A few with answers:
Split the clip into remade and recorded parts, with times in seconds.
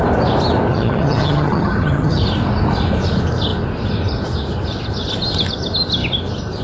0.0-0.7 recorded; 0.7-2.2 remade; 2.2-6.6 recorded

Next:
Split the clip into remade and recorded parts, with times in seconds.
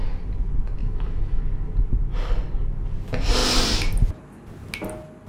0.0-0.8 recorded; 0.8-1.4 remade; 1.4-5.3 recorded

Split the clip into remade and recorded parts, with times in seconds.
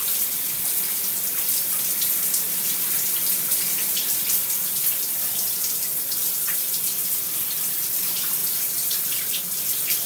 0.0-8.4 remade; 8.4-8.9 recorded; 8.9-10.1 remade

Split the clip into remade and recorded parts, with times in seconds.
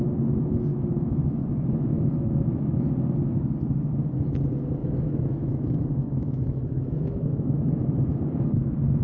0.0-0.7 recorded; 0.7-2.9 remade; 2.9-4.8 recorded; 4.8-7.9 remade; 7.9-9.0 recorded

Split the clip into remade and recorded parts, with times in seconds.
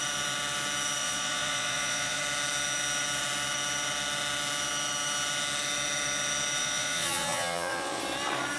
0.0-1.0 recorded; 1.0-2.2 remade; 2.2-6.6 recorded; 6.6-8.0 remade; 8.0-8.6 recorded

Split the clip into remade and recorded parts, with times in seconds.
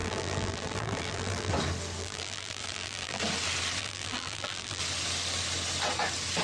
0.0-1.5 remade; 1.5-2.0 recorded; 2.0-3.2 remade; 3.2-3.8 recorded; 3.8-4.8 remade; 4.8-6.4 recorded